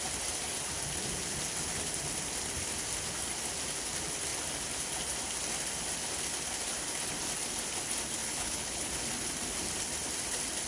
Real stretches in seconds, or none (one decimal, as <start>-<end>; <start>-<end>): 0.0-8.2; 8.9-10.7